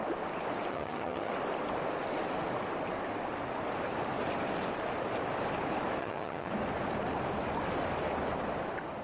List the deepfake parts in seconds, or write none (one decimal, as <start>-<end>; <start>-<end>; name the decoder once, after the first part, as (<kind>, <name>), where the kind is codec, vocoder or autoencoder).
0.7-1.3 (vocoder, HiFi-GAN); 6.0-6.5